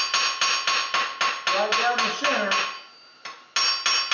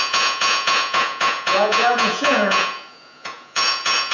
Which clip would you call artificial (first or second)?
second